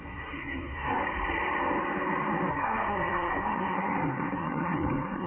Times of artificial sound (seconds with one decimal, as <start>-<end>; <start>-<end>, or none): 0.0-1.0; 2.5-5.3